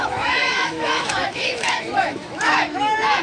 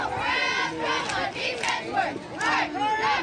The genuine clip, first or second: second